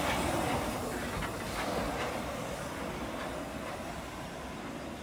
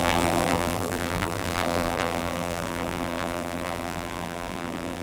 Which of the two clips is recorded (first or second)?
first